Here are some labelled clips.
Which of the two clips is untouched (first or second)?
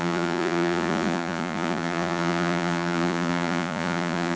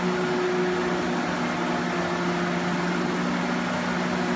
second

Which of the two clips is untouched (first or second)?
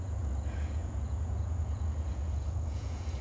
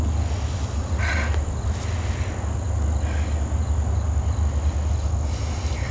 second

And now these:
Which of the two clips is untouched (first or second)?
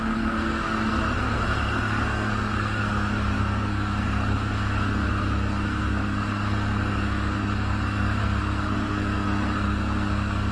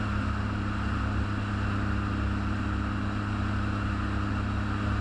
second